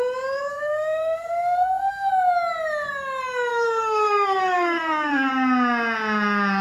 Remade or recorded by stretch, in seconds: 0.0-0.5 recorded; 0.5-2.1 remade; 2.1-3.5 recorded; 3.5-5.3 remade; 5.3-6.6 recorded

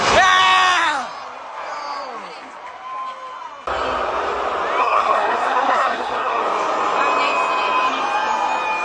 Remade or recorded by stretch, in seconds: 0.0-4.8 recorded; 4.8-6.4 remade; 6.4-8.8 recorded

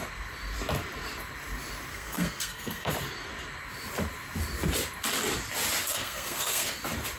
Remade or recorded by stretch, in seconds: 0.0-1.9 recorded; 1.9-2.9 remade; 2.9-5.9 recorded; 5.9-6.8 remade; 6.8-7.2 recorded

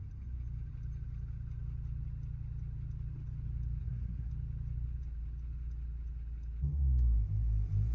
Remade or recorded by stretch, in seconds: 0.0-3.8 recorded; 3.8-4.3 remade; 4.3-7.9 recorded

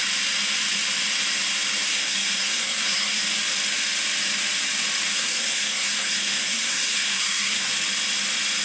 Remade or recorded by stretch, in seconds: 0.0-1.9 recorded; 1.9-3.2 remade; 3.2-5.1 recorded; 5.1-7.7 remade; 7.7-8.6 recorded

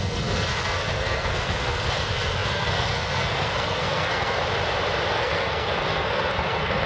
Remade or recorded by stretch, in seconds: 0.0-4.4 remade; 4.4-5.1 recorded; 5.1-6.9 remade

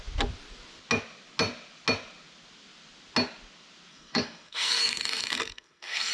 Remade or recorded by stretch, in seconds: 0.0-3.9 recorded; 3.9-6.1 remade